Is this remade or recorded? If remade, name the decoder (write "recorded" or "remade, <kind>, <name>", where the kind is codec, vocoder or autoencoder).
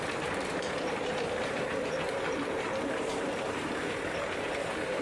remade, vocoder, BigVGAN v2